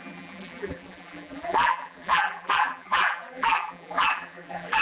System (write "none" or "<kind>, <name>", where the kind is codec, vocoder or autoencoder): vocoder, BigVGAN v2